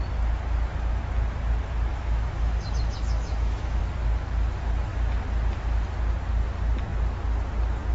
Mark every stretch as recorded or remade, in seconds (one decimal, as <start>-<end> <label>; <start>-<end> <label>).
0.0-1.9 recorded; 1.9-3.8 remade; 3.8-7.9 recorded